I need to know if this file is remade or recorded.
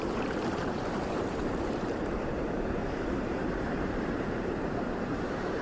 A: remade